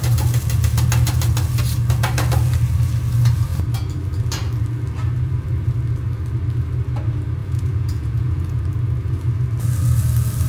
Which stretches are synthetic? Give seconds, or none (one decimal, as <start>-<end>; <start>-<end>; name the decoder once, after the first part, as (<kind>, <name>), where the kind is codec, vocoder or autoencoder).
7.4-8.6 (vocoder, Vocos)